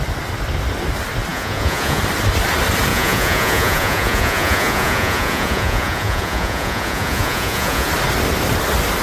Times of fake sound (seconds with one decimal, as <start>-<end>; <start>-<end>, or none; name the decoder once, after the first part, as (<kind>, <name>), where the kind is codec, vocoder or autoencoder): 1.3-2.0 (vocoder, Vocos); 2.9-7.9